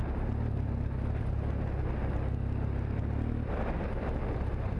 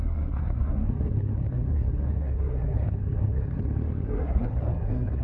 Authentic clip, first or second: first